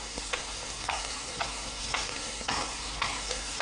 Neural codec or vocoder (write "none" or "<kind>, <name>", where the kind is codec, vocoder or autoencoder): codec, SNAC